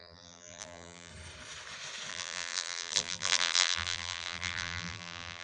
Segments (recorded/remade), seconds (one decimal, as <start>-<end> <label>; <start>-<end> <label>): 0.0-1.1 remade; 1.1-2.1 recorded; 2.1-5.4 remade